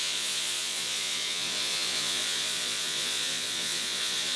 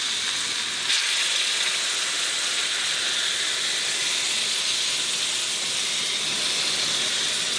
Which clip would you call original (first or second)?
second